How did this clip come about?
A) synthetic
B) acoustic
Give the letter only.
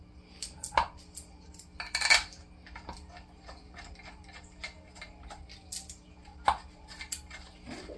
B